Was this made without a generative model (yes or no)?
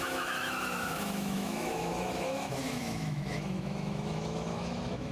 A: no